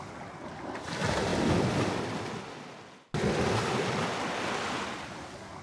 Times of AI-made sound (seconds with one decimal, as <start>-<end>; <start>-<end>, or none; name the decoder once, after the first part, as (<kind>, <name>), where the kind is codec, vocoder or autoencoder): none